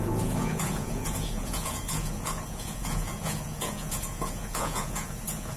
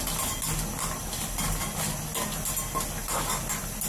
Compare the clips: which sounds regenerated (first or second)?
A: first